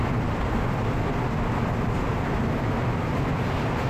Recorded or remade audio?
recorded